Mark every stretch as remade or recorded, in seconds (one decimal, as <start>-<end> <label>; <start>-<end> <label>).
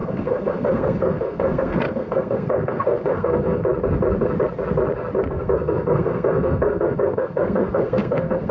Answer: 0.0-3.6 remade; 3.6-5.3 recorded; 5.3-8.5 remade